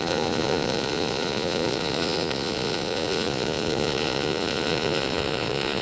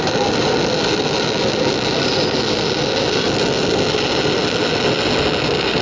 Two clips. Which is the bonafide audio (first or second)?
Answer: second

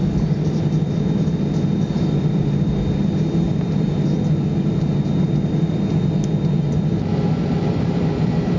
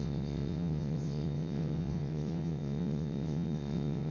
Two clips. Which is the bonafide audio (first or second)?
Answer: first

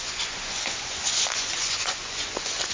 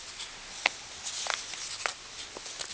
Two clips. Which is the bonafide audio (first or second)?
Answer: second